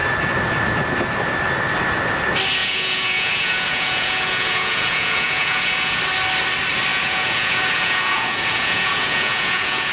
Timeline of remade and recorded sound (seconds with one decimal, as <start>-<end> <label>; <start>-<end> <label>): 0.0-2.6 recorded; 2.6-6.0 remade; 6.0-6.9 recorded; 6.9-9.9 remade